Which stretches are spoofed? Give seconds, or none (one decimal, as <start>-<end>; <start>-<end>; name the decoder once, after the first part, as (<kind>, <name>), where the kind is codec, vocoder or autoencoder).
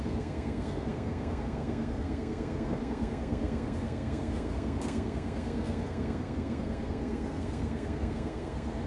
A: 0.0-8.9 (codec, SNAC)